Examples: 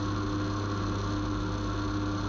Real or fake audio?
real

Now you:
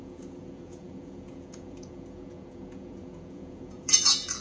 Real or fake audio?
fake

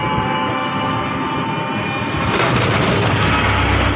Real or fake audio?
real